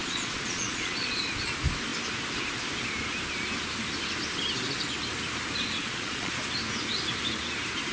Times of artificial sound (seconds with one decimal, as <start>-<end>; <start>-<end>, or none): 0.0-1.2; 5.8-6.3